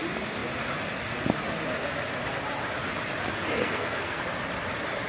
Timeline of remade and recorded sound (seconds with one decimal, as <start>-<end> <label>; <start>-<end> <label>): 0.0-3.6 recorded; 3.6-4.2 remade; 4.2-5.1 recorded